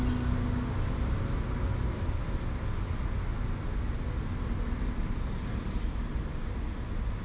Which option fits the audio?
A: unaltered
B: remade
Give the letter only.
A